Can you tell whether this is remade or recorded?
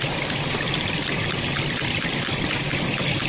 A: recorded